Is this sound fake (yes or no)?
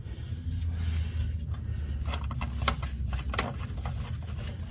no